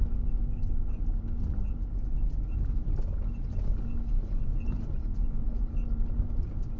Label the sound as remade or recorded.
recorded